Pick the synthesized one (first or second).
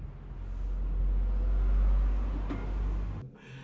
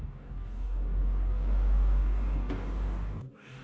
second